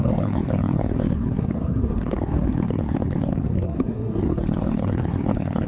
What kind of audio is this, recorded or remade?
remade